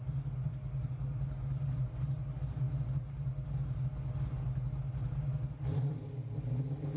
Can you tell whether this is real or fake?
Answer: real